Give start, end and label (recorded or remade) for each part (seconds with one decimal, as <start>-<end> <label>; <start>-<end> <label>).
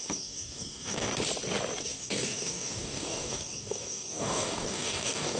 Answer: 0.0-1.1 remade; 1.1-1.8 recorded; 1.8-5.4 remade